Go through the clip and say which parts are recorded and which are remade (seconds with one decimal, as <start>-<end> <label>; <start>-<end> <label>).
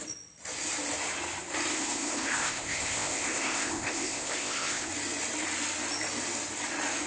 0.0-1.7 recorded; 1.7-4.9 remade; 4.9-7.1 recorded